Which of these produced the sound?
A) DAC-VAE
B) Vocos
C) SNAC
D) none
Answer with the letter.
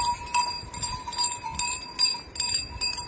D